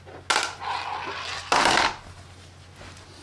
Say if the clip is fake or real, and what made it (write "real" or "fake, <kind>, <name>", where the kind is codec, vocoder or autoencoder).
real